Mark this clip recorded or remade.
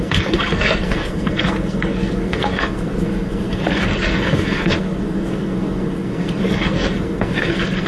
remade